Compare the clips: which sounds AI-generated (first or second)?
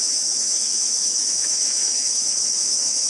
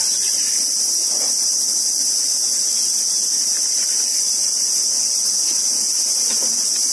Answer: first